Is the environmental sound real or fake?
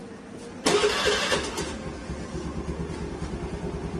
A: real